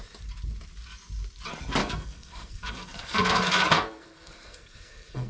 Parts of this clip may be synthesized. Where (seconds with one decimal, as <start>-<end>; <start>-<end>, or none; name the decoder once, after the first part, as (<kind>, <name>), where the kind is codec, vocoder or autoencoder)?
1.8-5.3 (codec, SNAC)